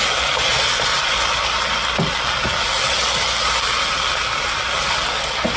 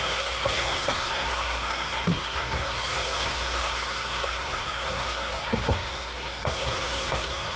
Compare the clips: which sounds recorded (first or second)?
first